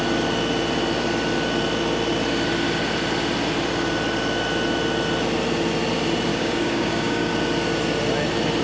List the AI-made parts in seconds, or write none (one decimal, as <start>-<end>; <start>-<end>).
6.3-7.3